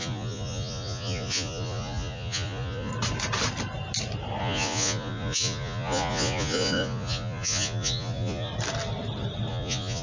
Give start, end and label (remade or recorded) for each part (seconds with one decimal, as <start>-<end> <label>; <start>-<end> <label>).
0.0-2.9 remade; 2.9-4.4 recorded; 4.4-8.5 remade; 8.5-9.5 recorded; 9.5-10.0 remade